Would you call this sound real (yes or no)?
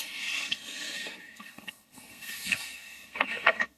no